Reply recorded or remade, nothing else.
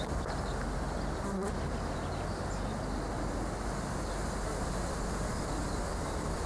recorded